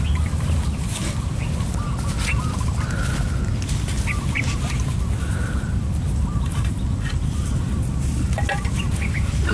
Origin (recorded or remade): recorded